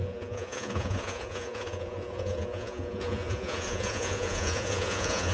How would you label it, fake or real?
fake